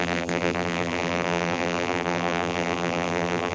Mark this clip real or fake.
fake